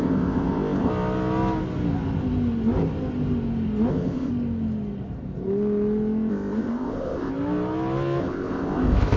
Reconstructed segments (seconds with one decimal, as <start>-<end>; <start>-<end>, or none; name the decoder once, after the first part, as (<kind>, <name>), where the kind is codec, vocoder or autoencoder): 0.0-0.9 (codec, ZipCodec); 3.9-4.3; 6.3-7.3; 8.2-9.2